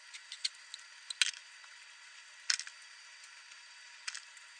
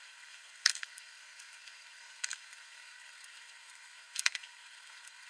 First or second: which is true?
first